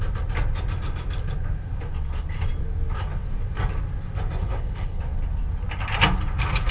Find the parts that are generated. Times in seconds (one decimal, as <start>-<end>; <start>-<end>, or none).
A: 4.4-5.0